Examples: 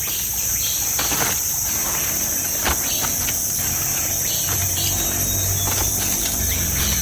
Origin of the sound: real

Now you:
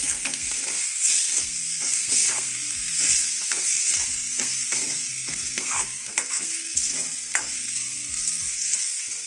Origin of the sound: fake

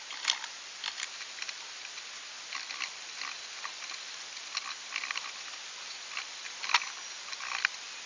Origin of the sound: real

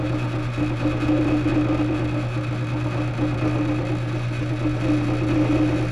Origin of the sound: real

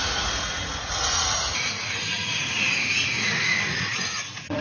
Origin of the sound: fake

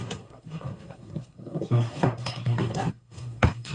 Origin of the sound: fake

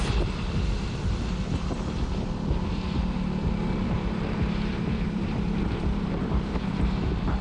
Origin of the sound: fake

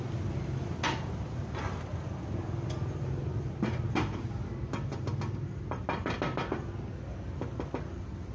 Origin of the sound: real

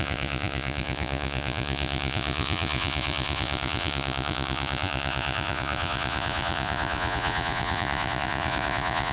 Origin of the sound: fake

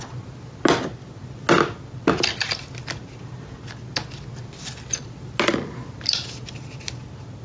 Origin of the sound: real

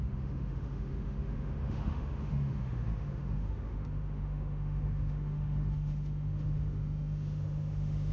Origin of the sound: fake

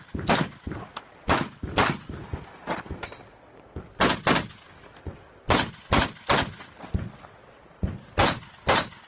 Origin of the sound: real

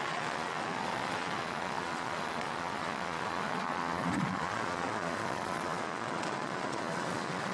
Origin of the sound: fake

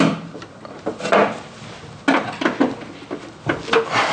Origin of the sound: real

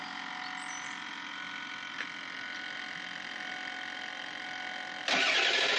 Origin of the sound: real